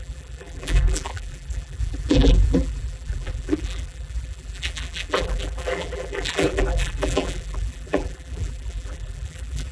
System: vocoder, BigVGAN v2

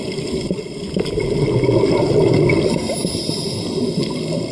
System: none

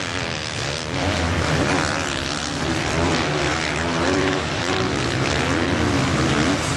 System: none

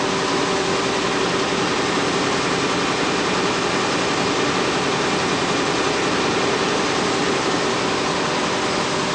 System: none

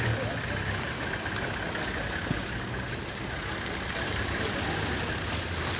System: none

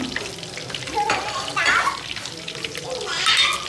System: none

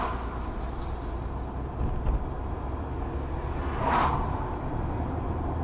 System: none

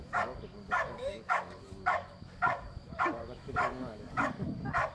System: codec, DAC